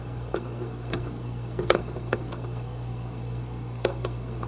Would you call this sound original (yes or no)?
no